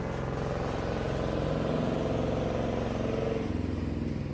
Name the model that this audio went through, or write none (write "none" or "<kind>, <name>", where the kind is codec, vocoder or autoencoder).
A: none